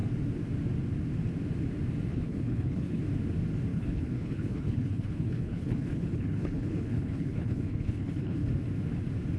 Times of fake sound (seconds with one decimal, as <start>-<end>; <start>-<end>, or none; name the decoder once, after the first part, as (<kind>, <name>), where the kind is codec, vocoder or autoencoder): 2.1-3.0 (codec, HILCodec); 3.7-8.5